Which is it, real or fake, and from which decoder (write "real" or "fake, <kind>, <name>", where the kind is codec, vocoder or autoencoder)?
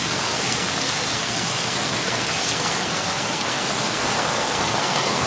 fake, codec, SNAC